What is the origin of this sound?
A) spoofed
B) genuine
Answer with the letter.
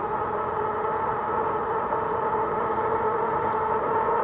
B